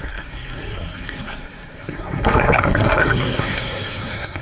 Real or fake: fake